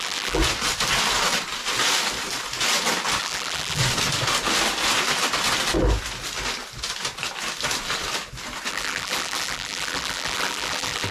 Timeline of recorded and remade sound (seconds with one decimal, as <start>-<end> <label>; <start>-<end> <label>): 0.0-0.4 remade; 0.4-3.2 recorded; 3.2-3.8 remade; 3.8-8.7 recorded; 8.7-11.1 remade